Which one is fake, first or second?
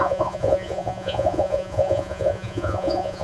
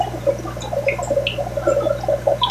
first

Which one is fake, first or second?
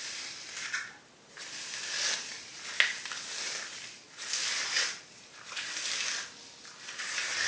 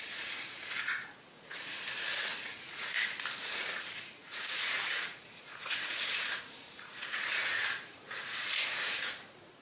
second